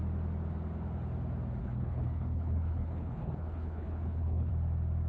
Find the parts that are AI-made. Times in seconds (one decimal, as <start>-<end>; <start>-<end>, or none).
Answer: 1.6-4.5